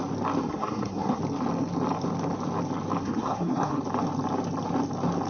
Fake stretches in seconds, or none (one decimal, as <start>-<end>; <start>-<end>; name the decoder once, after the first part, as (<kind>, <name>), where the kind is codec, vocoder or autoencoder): 0.4-1.2 (codec, SNAC); 3.0-3.8